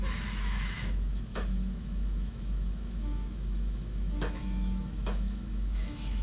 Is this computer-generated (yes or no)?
yes